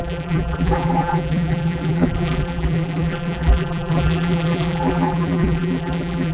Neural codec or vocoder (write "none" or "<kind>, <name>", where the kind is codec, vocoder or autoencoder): vocoder, BigVGAN v2